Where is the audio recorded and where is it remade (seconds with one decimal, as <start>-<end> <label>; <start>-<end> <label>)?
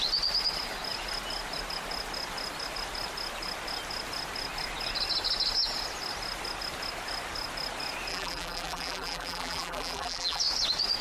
0.0-8.1 recorded; 8.1-10.4 remade; 10.4-11.0 recorded